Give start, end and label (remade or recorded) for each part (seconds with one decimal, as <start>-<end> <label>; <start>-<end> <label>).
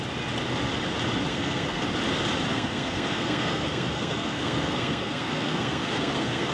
0.0-1.3 recorded; 1.3-1.8 remade; 1.8-2.5 recorded; 2.5-6.5 remade